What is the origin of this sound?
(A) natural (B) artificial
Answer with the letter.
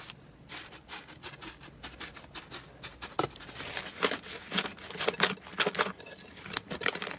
A